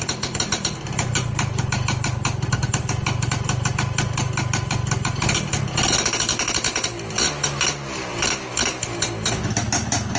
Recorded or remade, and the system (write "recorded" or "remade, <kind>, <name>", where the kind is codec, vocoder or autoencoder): recorded